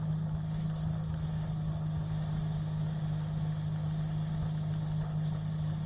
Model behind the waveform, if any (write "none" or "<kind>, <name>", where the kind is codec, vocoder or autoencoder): none